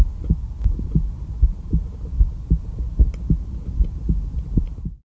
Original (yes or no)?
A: yes